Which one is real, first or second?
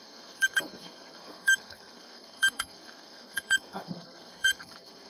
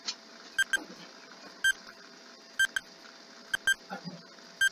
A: second